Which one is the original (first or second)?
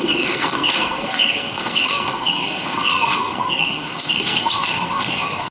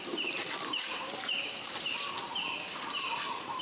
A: second